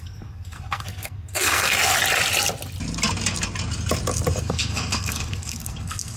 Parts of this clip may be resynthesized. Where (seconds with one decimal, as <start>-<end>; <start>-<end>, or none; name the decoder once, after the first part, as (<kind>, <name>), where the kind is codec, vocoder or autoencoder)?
0.0-1.9 (codec, SNAC); 4.4-6.2